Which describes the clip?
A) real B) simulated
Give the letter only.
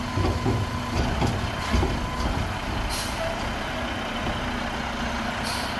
A